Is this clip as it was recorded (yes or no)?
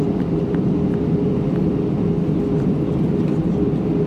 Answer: yes